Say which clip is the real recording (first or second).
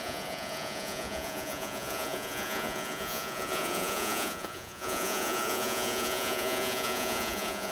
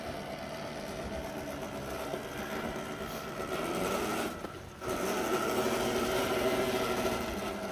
second